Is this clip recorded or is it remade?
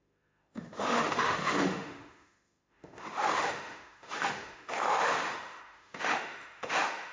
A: remade